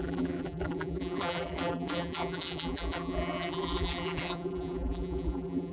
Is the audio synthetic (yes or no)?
yes